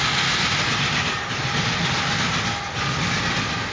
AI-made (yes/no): no